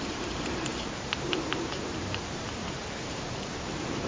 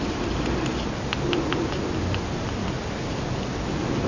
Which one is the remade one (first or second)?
first